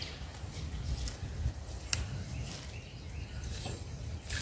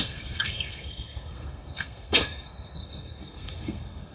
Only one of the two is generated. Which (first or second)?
second